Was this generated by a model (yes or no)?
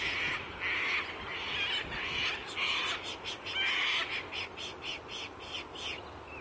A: no